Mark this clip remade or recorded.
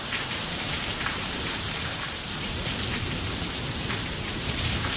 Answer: remade